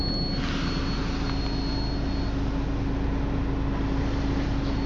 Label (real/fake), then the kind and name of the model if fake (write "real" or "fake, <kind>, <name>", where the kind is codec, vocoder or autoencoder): real